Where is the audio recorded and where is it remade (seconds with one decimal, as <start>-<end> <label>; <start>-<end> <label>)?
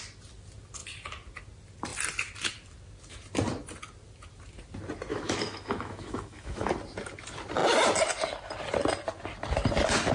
0.0-5.1 recorded; 5.1-6.7 remade; 6.7-10.1 recorded